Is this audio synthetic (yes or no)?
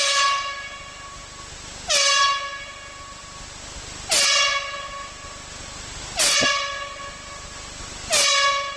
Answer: no